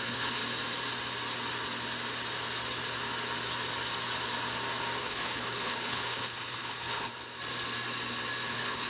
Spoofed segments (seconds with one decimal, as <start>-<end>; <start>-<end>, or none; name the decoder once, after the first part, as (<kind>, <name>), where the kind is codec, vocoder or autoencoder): 0.0-0.4 (codec, HILCodec); 5.0-7.1; 8.5-8.9